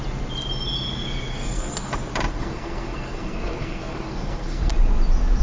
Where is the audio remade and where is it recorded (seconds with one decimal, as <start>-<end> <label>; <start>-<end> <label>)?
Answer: 0.0-1.3 recorded; 1.3-1.9 remade; 1.9-2.3 recorded; 2.3-4.7 remade; 4.7-5.4 recorded